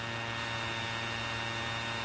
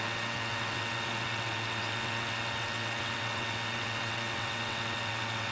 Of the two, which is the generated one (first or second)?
second